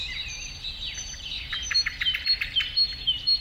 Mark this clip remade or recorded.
remade